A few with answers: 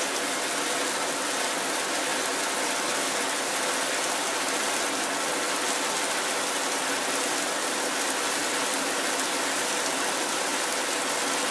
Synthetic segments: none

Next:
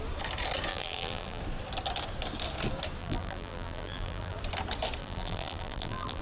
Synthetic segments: 0.7-1.4 (vocoder, BigVGAN v2); 3.0-4.4; 5.0-6.2

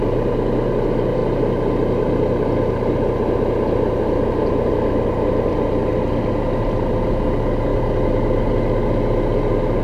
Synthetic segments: none

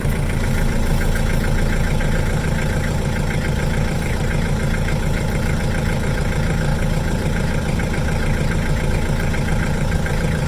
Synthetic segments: 0.0-0.9 (vocoder, BigVGAN v2); 2.0-10.5

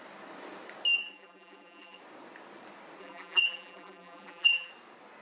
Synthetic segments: 1.0-2.0 (vocoder, BigVGAN v2); 3.0-4.7

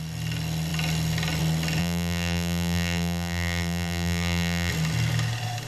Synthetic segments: 1.8-4.7 (vocoder, BigVGAN v2)